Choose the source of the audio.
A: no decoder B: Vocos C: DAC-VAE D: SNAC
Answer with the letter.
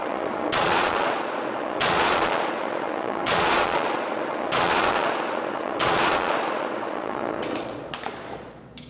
B